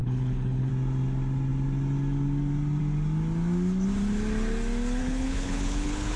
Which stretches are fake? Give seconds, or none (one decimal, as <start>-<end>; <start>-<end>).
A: 0.0-0.7; 5.0-6.2